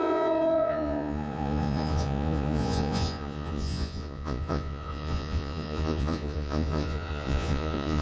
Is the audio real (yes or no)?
no